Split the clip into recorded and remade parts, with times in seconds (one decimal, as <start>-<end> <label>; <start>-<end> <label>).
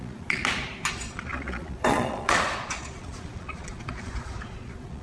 0.0-0.4 remade; 0.4-0.9 recorded; 0.9-5.0 remade